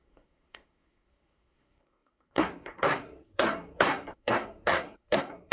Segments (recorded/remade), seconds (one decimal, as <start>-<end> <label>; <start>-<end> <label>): 0.0-5.5 remade